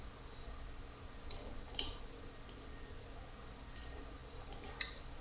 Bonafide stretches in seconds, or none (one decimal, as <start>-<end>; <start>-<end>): 0.0-5.2